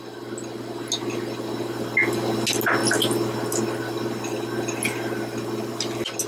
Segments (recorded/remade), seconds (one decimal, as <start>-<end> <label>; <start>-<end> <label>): 0.0-6.3 recorded